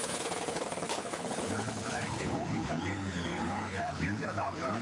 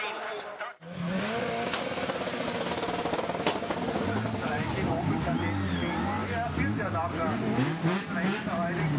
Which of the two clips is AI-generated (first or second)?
first